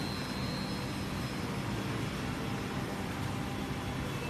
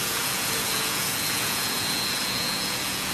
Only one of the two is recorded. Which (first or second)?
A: first